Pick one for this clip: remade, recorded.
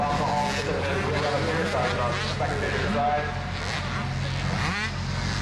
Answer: recorded